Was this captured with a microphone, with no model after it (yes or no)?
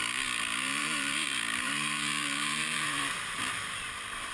no